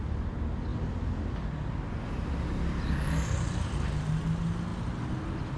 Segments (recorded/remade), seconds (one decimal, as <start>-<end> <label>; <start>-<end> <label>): 0.0-5.6 recorded